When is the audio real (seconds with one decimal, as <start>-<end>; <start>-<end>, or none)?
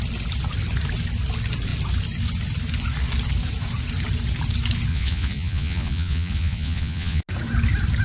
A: 0.0-4.9; 7.2-8.0